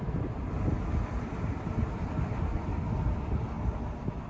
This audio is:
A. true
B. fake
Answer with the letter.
A